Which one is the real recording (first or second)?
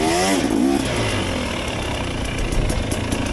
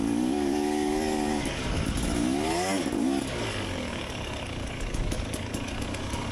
first